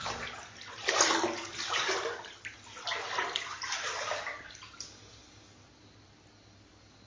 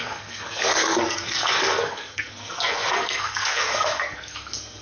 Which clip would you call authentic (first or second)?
first